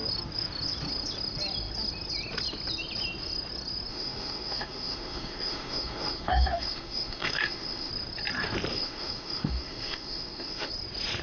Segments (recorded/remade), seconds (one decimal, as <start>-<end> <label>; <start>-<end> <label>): 0.0-3.9 recorded; 3.9-7.9 remade; 7.9-8.7 recorded; 8.7-10.7 remade; 10.7-11.2 recorded